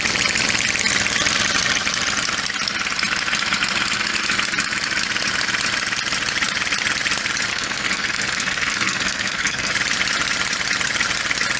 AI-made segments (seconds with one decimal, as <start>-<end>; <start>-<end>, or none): 7.5-9.7